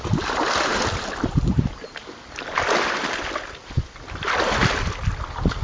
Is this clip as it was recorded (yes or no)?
yes